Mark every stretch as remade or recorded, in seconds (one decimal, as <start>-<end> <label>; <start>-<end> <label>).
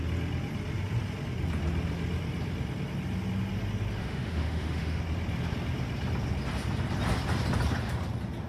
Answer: 0.0-4.0 recorded; 4.0-5.0 remade; 5.0-8.5 recorded